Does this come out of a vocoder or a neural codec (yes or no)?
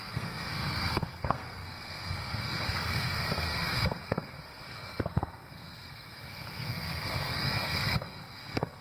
yes